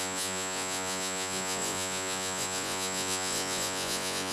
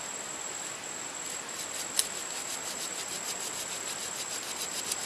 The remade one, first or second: first